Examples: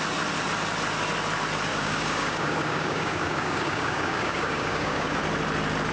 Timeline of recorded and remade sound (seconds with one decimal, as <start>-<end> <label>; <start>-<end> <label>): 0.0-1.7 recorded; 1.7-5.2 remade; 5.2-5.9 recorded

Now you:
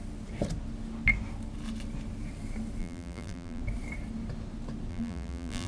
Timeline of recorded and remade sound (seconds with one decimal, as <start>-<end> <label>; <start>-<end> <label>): 0.0-2.8 recorded; 2.8-3.6 remade; 3.6-4.9 recorded; 4.9-5.7 remade

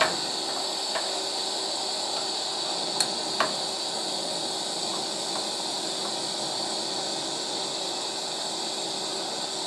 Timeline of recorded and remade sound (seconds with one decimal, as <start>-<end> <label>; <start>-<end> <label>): 0.0-9.7 recorded